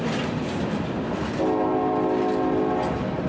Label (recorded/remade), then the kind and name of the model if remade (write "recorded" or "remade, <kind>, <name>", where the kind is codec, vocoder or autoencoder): recorded